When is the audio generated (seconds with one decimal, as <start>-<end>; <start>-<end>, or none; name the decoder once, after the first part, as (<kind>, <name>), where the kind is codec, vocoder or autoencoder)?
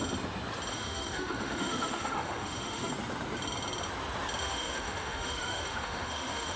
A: 0.7-2.9 (autoencoder, DAC-VAE); 4.4-6.6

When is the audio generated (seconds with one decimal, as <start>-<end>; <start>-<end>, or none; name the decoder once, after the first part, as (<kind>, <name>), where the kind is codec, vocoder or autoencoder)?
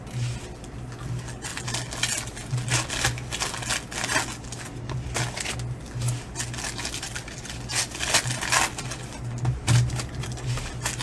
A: none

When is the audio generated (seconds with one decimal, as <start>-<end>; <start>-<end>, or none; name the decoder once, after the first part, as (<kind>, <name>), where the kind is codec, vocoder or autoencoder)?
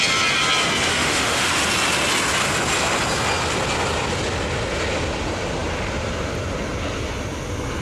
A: 0.9-1.5 (autoencoder, DAC-VAE)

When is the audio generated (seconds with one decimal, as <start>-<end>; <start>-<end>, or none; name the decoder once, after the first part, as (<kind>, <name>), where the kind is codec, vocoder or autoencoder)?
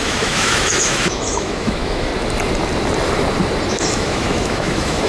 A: 0.0-2.1 (autoencoder, DAC-VAE); 3.7-5.1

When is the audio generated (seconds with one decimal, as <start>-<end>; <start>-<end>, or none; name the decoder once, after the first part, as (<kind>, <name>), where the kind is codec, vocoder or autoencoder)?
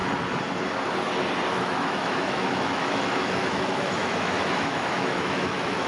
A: 1.5-5.9 (autoencoder, DAC-VAE)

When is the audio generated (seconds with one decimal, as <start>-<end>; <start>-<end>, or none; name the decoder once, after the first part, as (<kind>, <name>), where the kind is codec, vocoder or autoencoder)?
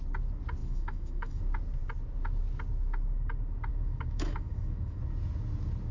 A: 0.6-1.4 (autoencoder, DAC-VAE); 3.7-5.0